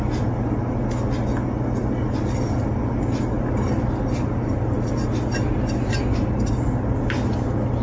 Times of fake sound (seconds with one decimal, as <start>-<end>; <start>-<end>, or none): none